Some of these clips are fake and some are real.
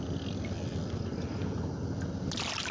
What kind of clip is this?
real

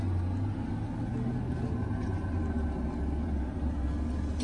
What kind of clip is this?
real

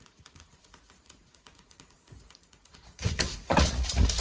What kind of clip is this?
fake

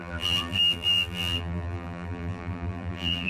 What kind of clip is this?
fake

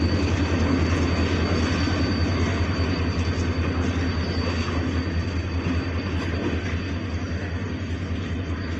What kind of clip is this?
real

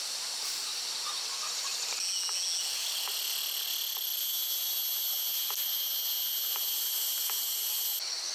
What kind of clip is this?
real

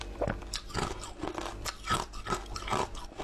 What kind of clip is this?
real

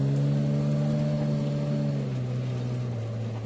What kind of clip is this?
real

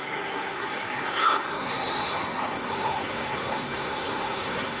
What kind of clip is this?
fake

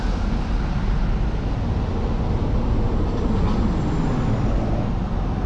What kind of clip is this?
real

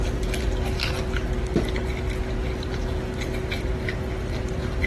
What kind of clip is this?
real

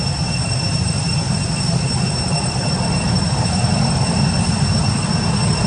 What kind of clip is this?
fake